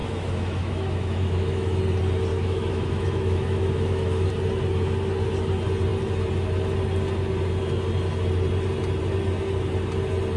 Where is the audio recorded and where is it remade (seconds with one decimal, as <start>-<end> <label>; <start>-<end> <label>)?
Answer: 0.0-1.8 remade; 1.8-2.3 recorded; 2.3-4.3 remade; 4.3-10.4 recorded